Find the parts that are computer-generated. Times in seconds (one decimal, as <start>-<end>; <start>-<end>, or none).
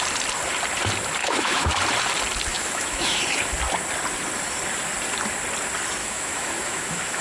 1.2-1.7; 2.5-3.2; 6.0-7.2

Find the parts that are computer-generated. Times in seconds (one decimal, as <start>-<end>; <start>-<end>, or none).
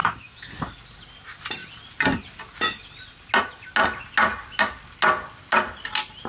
0.0-0.5